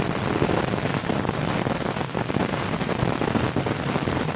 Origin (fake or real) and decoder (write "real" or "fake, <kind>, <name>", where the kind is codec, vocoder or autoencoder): fake, vocoder, BigVGAN v2